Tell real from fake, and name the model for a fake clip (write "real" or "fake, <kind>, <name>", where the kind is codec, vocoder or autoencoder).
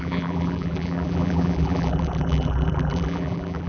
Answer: fake, vocoder, BigVGAN v2